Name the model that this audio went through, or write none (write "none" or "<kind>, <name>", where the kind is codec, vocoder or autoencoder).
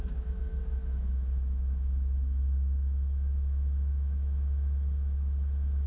autoencoder, DAC-VAE